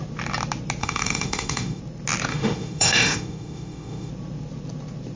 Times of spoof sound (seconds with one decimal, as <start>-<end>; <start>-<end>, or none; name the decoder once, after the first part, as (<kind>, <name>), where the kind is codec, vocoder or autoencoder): 0.8-1.8 (autoencoder, DAC-VAE); 2.3-4.1